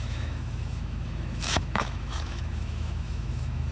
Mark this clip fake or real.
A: fake